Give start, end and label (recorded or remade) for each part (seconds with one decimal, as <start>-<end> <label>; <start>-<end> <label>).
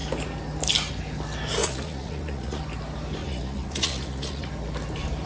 0.0-1.6 recorded; 1.6-2.6 remade; 2.6-3.2 recorded; 3.2-4.5 remade; 4.5-5.3 recorded